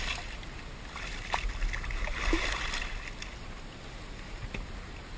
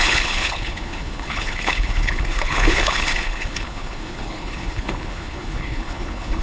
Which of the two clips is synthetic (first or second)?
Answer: second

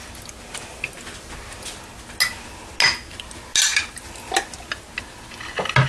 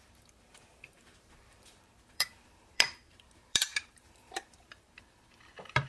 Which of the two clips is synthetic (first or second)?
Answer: second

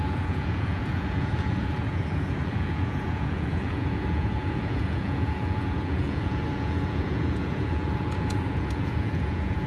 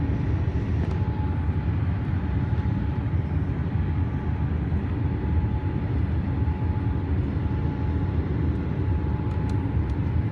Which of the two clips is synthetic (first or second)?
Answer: first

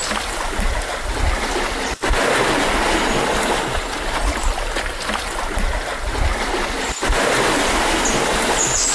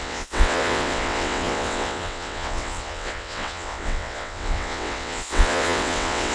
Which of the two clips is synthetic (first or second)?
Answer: second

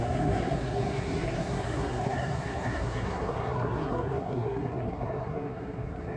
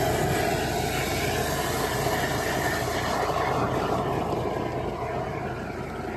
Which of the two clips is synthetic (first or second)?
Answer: first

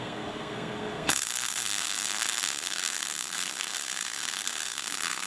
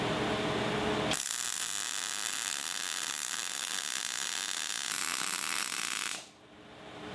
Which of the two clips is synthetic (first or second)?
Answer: first